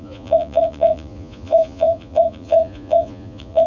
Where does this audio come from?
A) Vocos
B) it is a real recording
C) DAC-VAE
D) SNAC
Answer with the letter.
A